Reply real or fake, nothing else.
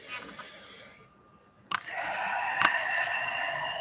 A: real